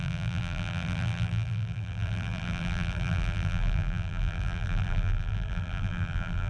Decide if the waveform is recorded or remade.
remade